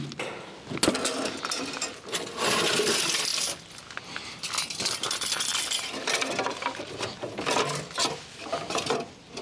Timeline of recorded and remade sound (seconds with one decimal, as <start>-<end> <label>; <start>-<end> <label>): 0.0-3.3 recorded; 3.3-5.1 remade; 5.1-9.4 recorded